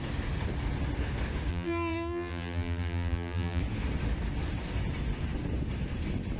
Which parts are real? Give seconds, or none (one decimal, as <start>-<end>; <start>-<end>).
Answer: 0.0-1.5; 3.6-6.4